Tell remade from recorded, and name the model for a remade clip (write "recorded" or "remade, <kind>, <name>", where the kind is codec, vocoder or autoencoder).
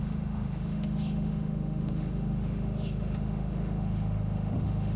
remade, autoencoder, DAC-VAE